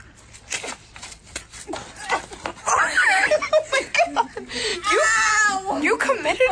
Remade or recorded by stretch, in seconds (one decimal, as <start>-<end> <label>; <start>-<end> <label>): 0.0-6.5 recorded